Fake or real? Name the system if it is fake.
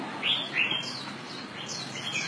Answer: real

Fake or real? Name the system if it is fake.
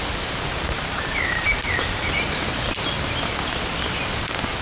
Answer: real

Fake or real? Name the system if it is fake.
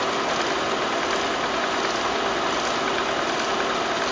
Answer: real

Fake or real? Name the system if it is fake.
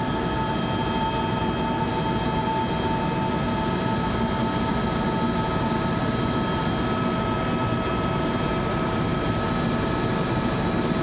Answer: real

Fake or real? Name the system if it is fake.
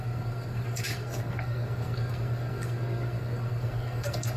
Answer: fake, codec, SNAC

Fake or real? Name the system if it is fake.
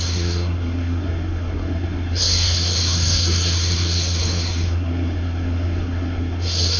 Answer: fake, codec, SNAC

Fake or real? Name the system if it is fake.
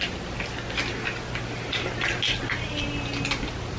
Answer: real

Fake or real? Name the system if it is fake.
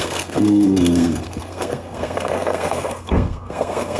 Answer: fake, codec, SNAC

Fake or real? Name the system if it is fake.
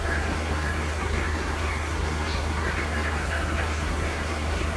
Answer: fake, codec, SNAC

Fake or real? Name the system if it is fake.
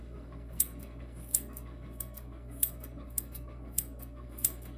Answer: fake, codec, SNAC